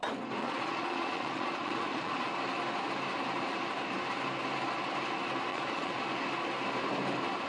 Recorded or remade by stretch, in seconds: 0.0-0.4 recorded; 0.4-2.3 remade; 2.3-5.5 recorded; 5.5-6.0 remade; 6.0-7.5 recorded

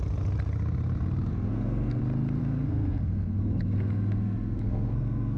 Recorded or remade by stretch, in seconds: 0.0-1.3 recorded; 1.3-2.0 remade; 2.0-2.4 recorded; 2.4-5.4 remade

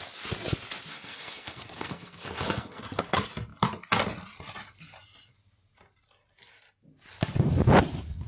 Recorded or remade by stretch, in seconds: 0.0-0.9 recorded; 0.9-2.8 remade; 2.8-8.3 recorded